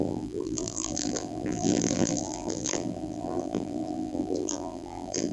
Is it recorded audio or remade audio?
remade